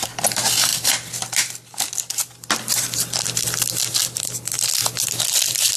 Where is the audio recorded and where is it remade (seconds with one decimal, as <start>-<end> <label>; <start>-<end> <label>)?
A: 0.0-0.7 recorded; 0.7-4.2 remade; 4.2-4.8 recorded; 4.8-5.8 remade